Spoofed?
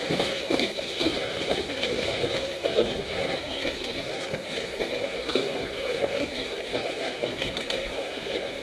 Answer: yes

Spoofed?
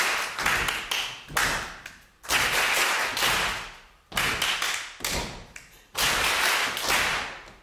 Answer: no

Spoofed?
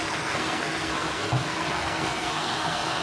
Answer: yes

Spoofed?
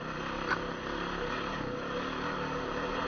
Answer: no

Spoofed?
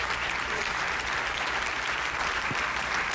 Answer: no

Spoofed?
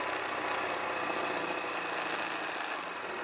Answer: no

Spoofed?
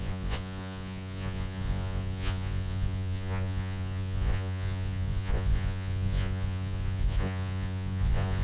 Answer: yes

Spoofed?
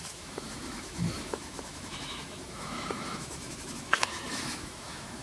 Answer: yes